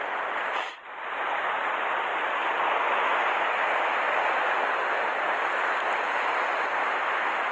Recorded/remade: recorded